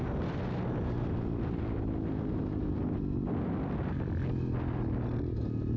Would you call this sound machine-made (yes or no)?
no